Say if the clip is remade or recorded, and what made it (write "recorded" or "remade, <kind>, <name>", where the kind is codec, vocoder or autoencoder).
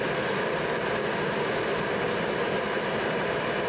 recorded